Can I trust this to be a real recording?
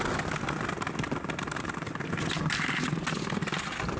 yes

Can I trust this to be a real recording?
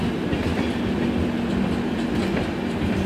yes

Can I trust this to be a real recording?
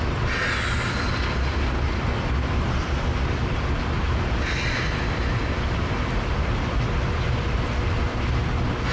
yes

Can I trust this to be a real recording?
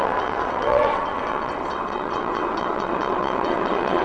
no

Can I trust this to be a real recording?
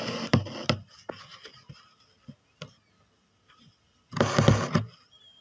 yes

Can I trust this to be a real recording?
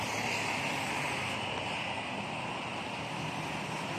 yes